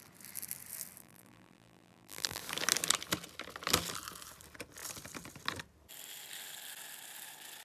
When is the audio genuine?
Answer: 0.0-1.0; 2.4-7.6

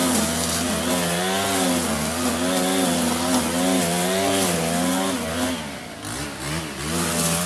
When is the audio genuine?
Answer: 0.0-7.5

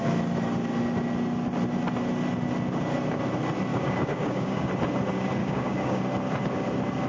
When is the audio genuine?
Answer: 0.0-3.7; 4.7-5.4; 6.0-7.1

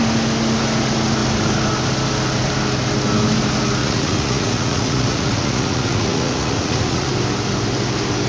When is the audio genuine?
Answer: 0.0-3.8; 7.1-8.3

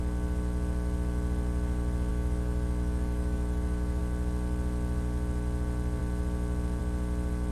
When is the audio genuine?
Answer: 0.0-2.1; 4.0-7.5

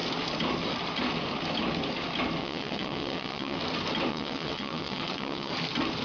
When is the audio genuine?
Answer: 0.0-2.4; 3.6-4.1; 5.5-6.0

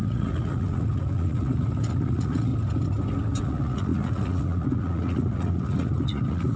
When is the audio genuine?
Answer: 2.5-3.4

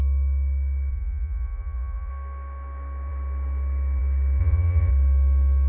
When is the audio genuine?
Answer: 0.0-0.9; 2.1-4.4; 4.9-5.7